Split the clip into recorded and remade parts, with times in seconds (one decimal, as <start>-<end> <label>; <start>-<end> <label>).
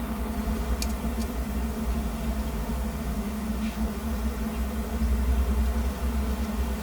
0.0-3.1 recorded; 3.1-4.0 remade; 4.0-6.8 recorded